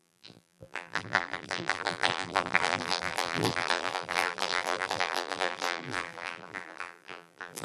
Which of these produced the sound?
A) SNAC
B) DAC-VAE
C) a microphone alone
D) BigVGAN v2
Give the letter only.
D